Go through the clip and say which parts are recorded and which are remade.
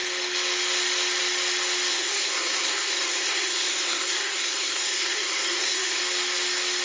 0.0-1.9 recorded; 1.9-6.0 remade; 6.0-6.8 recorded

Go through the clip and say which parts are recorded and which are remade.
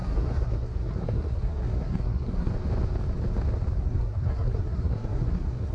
0.0-2.5 remade; 2.5-3.8 recorded; 3.8-5.7 remade